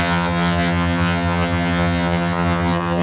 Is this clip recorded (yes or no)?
no